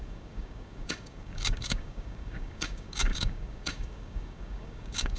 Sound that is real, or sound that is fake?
fake